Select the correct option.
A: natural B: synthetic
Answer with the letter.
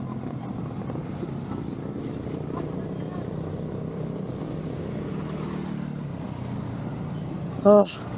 A